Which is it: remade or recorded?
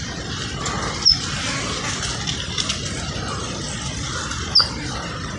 recorded